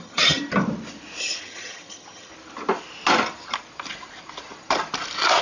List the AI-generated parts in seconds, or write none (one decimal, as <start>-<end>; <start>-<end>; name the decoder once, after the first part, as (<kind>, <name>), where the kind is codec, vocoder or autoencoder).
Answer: 0.0-0.4 (vocoder, HiFi-GAN); 1.2-2.3

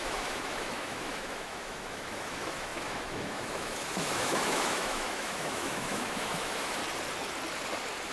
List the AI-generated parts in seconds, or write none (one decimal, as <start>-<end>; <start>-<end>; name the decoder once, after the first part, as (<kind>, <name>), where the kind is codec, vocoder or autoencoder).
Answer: 0.0-6.8 (autoencoder, DAC-VAE)

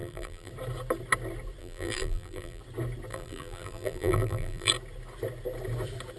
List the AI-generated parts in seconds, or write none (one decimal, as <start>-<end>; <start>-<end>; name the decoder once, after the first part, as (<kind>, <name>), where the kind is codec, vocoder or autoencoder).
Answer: 0.0-0.5 (vocoder, BigVGAN v2); 1.6-2.6; 3.1-4.7